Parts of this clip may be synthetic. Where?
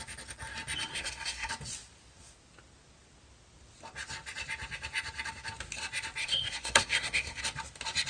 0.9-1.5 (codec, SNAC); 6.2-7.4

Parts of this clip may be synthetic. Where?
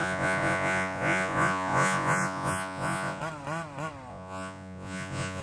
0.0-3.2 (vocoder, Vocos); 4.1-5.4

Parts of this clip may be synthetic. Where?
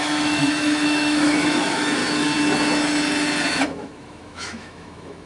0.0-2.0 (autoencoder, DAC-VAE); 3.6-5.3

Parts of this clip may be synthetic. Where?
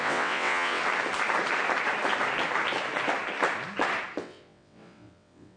0.0-0.8 (vocoder, WaveNeXt); 4.2-5.6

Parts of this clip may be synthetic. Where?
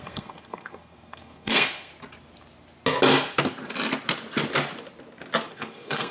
0.0-1.9 (codec, SNAC); 5.5-6.1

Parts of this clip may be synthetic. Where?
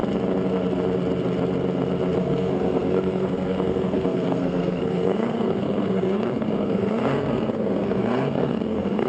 2.2-9.1 (codec, SNAC)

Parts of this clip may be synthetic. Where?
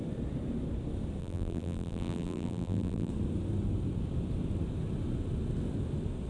1.2-3.1 (vocoder, BigVGAN v2)